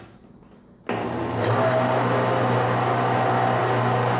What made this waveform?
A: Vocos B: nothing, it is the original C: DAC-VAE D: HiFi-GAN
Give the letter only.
B